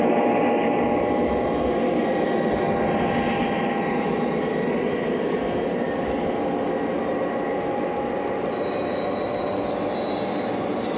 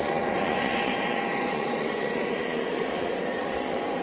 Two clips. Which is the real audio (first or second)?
first